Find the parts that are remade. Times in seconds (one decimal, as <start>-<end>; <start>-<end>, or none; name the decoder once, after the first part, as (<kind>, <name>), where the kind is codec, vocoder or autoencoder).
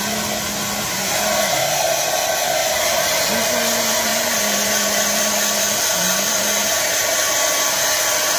2.6-3.1 (vocoder, BigVGAN v2); 4.1-8.0